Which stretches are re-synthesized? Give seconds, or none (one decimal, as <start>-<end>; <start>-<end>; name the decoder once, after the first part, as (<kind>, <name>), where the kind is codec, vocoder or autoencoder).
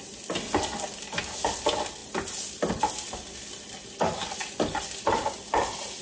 none